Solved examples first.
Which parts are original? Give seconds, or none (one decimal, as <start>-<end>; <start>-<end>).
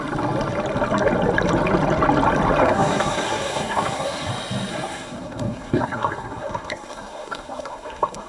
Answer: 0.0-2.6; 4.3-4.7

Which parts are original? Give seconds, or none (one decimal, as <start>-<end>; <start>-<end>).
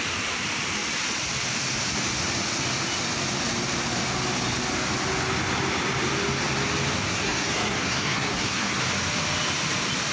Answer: 0.0-7.1; 8.8-10.1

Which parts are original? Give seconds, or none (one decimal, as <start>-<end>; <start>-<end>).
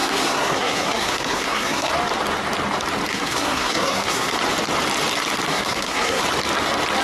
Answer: 1.9-3.1; 4.3-5.5; 6.2-7.0